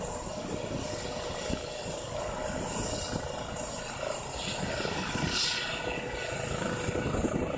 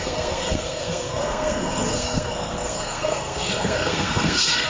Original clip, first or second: first